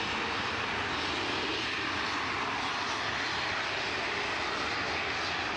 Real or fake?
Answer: real